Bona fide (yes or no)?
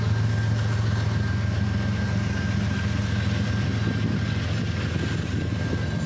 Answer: yes